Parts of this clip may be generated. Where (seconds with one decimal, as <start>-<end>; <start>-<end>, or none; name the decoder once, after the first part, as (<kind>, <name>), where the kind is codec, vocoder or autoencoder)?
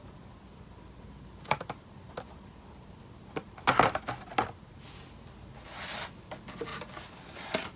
none